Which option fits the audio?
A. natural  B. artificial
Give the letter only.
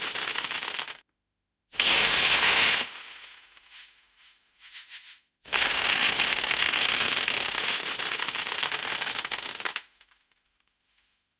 B